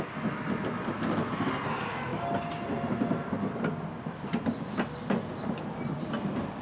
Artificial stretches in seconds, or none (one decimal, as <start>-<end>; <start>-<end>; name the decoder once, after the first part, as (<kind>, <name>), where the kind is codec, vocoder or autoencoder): none